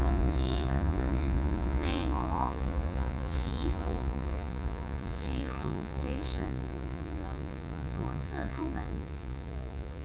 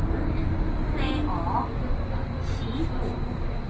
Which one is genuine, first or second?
second